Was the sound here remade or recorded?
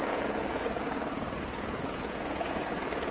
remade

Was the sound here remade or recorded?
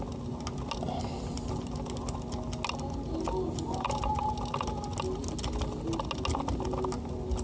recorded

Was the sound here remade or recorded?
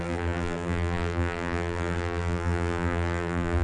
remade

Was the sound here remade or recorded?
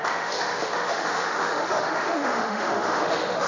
remade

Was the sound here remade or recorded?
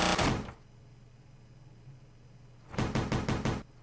recorded